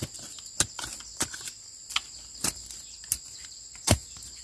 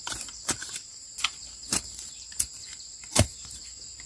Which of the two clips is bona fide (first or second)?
first